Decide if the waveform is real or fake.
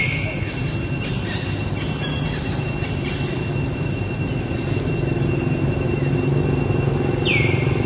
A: real